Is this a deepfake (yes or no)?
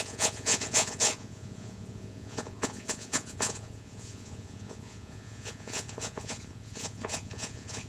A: yes